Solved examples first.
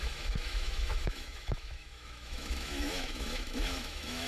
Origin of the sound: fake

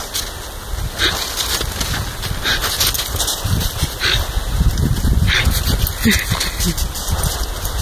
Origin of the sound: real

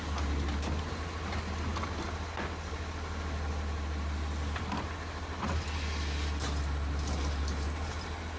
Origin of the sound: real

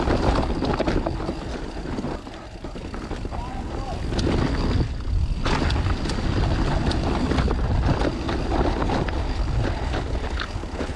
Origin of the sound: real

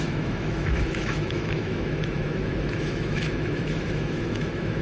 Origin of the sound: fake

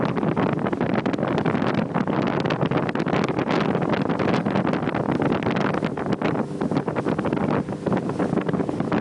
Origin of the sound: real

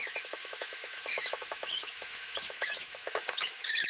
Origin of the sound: fake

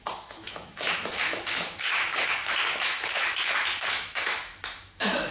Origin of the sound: fake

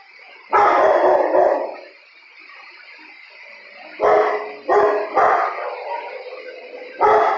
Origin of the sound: real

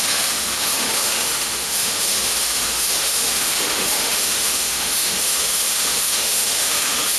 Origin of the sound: fake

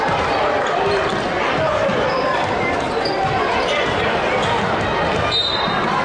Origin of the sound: real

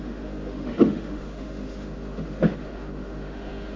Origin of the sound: fake